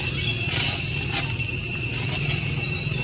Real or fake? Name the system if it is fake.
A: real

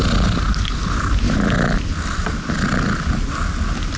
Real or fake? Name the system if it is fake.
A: real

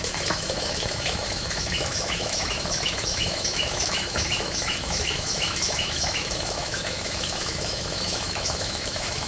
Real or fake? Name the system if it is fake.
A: fake, autoencoder, DAC-VAE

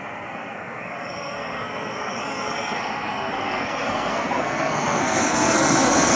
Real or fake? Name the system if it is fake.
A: fake, codec, SNAC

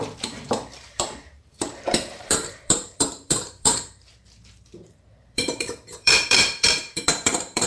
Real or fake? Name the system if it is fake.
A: fake, vocoder, BigVGAN v2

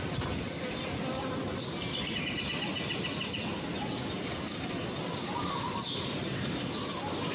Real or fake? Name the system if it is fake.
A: real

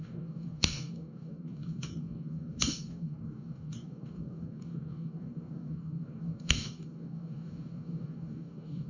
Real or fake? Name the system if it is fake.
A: fake, codec, DAC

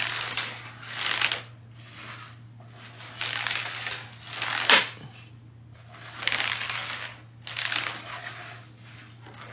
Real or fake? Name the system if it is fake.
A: real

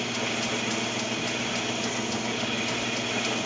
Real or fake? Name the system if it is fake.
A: real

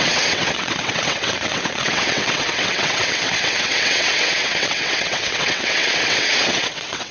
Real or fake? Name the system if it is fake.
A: fake, vocoder, WaveNeXt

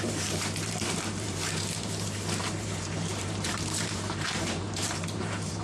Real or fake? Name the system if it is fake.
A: fake, vocoder, BigVGAN v2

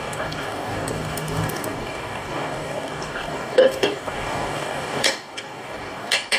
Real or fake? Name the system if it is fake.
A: fake, codec, DAC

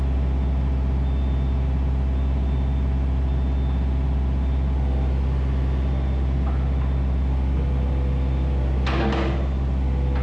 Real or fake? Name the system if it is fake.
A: real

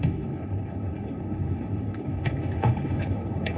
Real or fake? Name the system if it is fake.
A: fake, codec, HILCodec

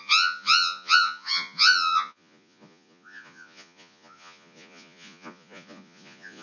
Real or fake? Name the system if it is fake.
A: fake, vocoder, Vocos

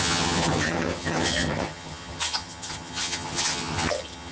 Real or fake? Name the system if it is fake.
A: fake, vocoder, HiFi-GAN